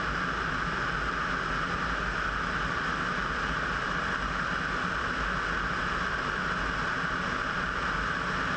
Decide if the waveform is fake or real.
real